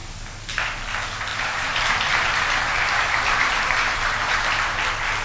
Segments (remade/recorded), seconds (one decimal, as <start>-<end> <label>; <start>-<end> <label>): 0.0-1.3 recorded; 1.3-4.4 remade; 4.4-5.2 recorded